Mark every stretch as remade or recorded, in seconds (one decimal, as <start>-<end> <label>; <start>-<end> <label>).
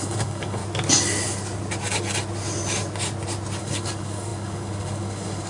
0.0-0.6 remade; 0.6-3.6 recorded; 3.6-5.5 remade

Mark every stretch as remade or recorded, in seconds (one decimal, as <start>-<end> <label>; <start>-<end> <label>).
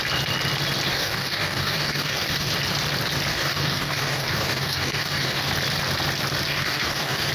0.0-0.9 recorded; 0.9-2.5 remade; 2.5-3.3 recorded; 3.3-5.5 remade; 5.5-6.5 recorded; 6.5-7.3 remade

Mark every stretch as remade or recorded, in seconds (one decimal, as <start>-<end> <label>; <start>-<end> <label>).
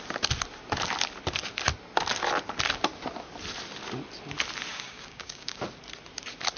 0.0-4.7 recorded; 4.7-5.6 remade; 5.6-6.6 recorded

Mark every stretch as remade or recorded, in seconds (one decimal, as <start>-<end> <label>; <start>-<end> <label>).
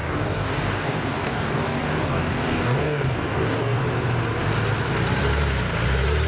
0.0-3.8 remade; 3.8-6.3 recorded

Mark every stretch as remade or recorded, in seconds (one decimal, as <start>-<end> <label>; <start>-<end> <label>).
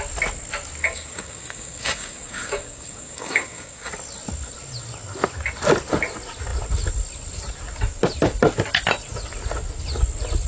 0.0-0.8 recorded; 0.8-3.9 remade; 3.9-10.5 recorded